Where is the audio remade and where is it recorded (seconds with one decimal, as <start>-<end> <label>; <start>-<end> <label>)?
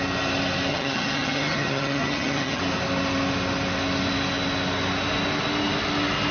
0.0-0.7 recorded; 0.7-2.6 remade; 2.6-6.3 recorded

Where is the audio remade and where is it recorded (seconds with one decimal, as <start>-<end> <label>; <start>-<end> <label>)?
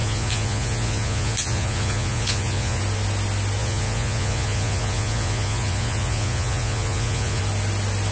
0.0-2.8 remade; 2.8-3.6 recorded; 3.6-7.4 remade; 7.4-8.1 recorded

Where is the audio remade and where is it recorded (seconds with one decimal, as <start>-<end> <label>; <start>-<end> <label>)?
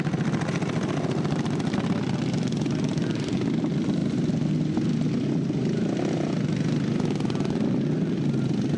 0.0-8.8 recorded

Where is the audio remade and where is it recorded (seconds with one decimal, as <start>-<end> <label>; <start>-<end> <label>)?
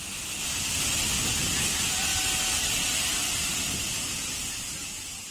0.0-5.3 recorded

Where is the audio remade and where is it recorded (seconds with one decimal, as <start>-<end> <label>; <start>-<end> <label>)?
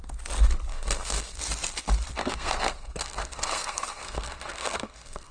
0.0-0.7 recorded; 0.7-1.4 remade; 1.4-2.2 recorded; 2.2-5.3 remade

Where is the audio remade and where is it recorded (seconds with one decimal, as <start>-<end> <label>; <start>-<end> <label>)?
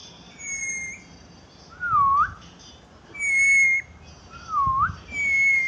0.0-5.7 recorded